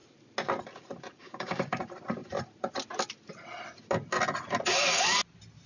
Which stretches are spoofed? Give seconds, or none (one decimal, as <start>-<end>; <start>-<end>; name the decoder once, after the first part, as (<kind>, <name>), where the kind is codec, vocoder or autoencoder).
1.2-1.8 (codec, DAC)